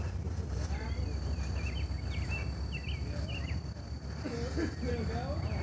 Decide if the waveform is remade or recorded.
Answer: recorded